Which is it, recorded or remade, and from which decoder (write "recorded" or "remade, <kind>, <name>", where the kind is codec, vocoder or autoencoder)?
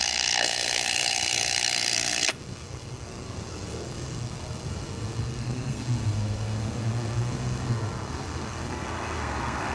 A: remade, codec, SNAC